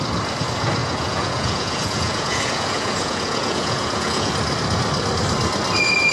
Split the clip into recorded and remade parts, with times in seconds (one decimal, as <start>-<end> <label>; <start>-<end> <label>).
0.0-0.8 recorded; 0.8-4.3 remade; 4.3-6.1 recorded